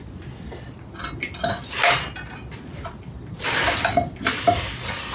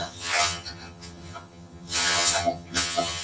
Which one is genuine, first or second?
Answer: first